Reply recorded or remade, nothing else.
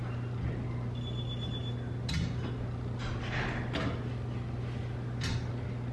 recorded